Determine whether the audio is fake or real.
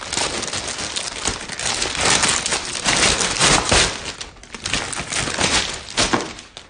real